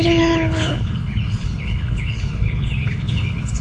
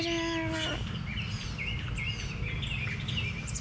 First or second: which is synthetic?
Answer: first